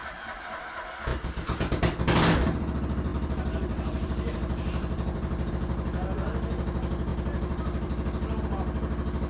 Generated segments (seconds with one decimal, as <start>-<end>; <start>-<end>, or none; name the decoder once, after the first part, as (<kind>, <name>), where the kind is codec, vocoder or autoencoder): 0.0-0.6 (vocoder, BigVGAN v2); 1.1-2.0; 3.1-5.5; 7.1-8.4